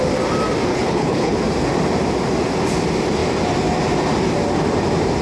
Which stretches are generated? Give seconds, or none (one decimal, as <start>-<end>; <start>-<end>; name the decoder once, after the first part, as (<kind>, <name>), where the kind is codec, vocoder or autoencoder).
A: 0.7-1.4 (codec, HILCodec)